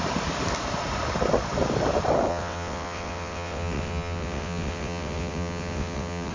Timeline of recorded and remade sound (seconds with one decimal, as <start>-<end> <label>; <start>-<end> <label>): 0.0-2.3 recorded; 2.3-6.3 remade